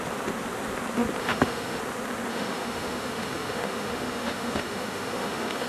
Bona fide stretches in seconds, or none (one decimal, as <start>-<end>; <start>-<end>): 0.0-1.2; 1.8-2.3

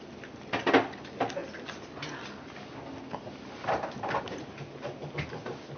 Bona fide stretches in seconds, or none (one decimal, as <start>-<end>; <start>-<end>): 0.0-5.8

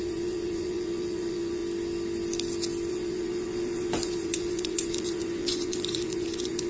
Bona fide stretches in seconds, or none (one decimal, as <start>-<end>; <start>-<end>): 1.6-2.9

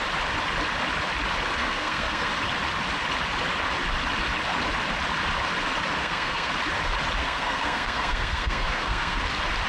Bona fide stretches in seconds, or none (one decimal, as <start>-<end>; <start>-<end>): 0.0-1.6; 2.3-6.0; 6.5-7.2; 9.2-9.7

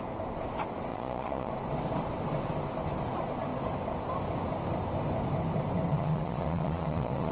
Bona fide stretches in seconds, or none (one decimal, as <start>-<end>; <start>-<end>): 0.0-0.9; 1.5-5.9